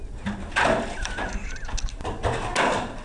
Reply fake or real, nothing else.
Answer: real